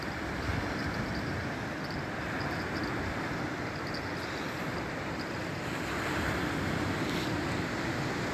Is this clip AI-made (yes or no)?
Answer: no